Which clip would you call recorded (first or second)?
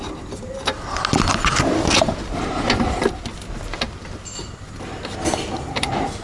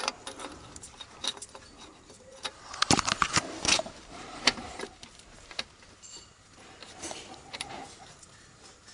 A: first